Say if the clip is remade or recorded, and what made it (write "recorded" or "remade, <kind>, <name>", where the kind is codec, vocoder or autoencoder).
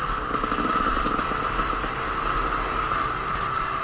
remade, vocoder, BigVGAN v2